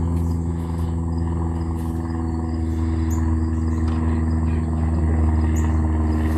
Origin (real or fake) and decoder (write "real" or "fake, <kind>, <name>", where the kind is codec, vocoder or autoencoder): real